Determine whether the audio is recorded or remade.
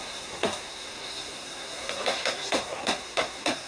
remade